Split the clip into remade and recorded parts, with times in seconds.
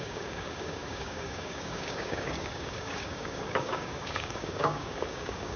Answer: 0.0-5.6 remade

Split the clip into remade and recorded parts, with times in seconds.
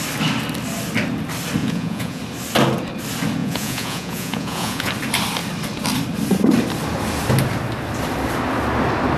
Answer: 0.0-1.6 recorded; 1.6-2.2 remade; 2.2-3.4 recorded; 3.4-4.9 remade; 4.9-9.2 recorded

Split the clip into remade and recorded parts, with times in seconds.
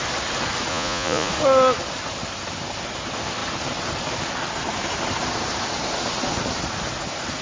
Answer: 0.0-0.7 recorded; 0.7-1.3 remade; 1.3-7.4 recorded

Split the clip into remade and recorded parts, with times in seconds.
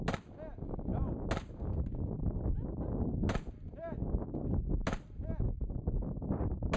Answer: 0.0-6.8 recorded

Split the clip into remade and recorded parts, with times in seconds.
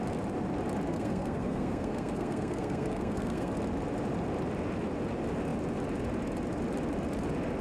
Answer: 0.0-0.9 recorded; 0.9-3.5 remade; 3.5-7.6 recorded